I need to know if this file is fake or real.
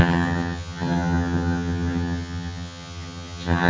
fake